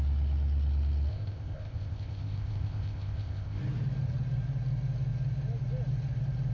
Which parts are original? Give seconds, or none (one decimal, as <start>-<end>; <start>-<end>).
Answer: 0.0-1.1; 3.6-6.5